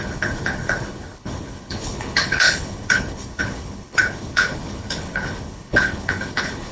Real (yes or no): no